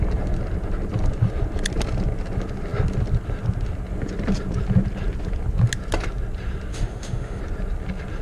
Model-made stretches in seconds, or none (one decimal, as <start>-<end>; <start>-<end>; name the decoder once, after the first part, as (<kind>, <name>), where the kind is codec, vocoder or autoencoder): 6.7-7.4 (autoencoder, DAC-VAE)